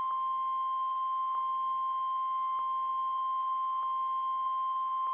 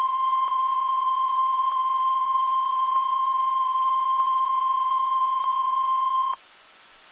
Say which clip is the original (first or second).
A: first